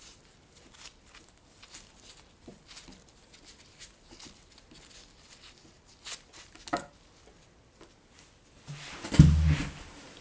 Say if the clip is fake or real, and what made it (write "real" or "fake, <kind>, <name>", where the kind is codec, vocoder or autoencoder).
real